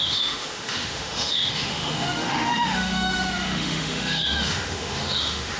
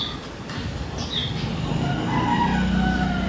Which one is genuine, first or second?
second